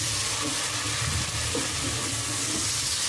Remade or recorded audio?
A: recorded